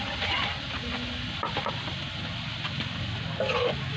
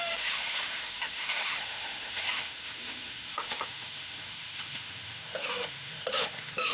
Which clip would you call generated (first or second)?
second